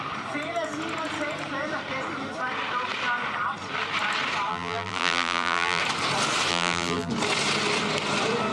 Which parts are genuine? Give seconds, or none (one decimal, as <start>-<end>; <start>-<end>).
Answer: 0.0-4.5; 5.8-6.5; 7.1-8.5